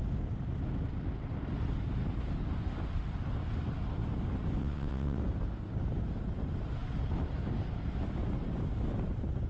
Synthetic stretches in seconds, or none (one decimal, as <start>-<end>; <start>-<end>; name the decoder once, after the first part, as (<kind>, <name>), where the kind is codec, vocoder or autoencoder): 4.6-5.2 (vocoder, WaveNeXt)